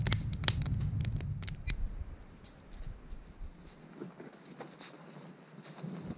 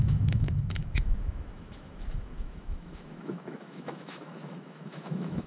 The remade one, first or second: second